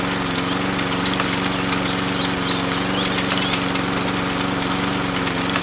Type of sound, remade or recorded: recorded